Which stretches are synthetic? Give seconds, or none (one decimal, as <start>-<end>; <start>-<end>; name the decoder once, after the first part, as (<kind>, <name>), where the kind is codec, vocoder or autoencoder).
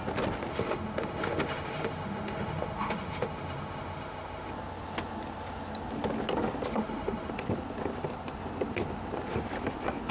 0.5-4.5 (autoencoder, DAC-VAE); 6.7-7.3